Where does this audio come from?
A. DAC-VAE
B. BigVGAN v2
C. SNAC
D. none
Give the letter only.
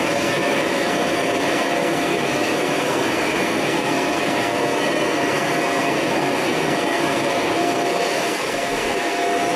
C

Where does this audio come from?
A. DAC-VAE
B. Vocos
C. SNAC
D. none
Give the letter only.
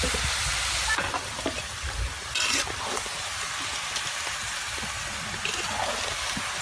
D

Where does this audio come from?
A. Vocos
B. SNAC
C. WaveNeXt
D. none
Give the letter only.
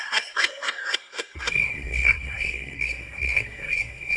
B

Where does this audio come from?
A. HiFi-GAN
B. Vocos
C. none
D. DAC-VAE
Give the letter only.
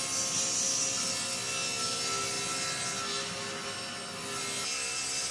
C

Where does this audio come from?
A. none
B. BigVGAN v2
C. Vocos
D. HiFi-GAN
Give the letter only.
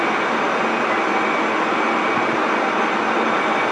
A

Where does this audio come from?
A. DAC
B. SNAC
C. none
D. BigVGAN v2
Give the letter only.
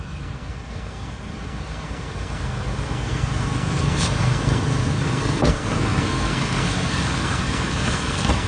B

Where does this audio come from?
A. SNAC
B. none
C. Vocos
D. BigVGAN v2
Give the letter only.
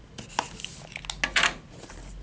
B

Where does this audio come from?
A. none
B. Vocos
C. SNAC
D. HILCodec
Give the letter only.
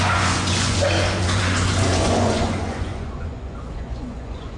B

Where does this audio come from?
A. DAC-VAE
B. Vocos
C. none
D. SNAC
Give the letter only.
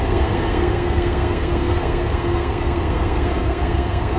D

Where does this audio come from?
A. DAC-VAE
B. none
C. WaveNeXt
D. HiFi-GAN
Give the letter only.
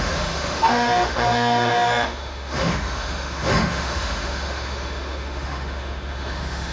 A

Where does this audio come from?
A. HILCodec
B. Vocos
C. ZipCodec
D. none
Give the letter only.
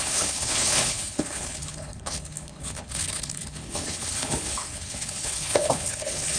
A